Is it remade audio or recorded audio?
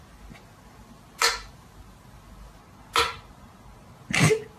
recorded